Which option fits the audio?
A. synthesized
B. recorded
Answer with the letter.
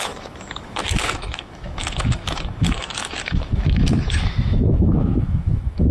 A